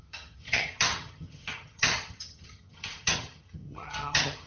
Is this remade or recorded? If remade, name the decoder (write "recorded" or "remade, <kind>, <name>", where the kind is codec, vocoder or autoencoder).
remade, vocoder, HiFi-GAN